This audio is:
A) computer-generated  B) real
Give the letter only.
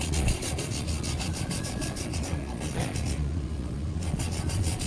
A